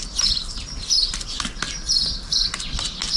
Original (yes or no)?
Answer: yes